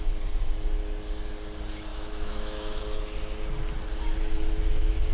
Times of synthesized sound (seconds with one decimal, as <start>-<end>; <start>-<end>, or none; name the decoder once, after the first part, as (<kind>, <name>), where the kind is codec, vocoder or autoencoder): 1.9-2.8 (autoencoder, DAC-VAE)